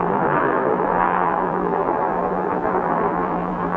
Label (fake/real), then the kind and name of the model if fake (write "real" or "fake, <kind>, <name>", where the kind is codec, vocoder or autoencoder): fake, vocoder, BigVGAN v2